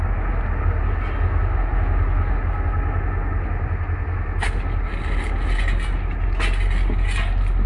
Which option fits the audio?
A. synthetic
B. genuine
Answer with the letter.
B